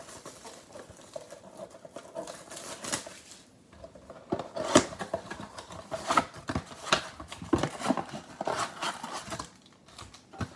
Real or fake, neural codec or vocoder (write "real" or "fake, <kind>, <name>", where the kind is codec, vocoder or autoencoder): real